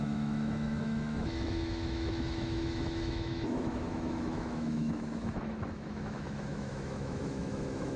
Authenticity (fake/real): fake